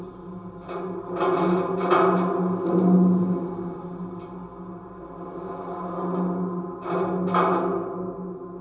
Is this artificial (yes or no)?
no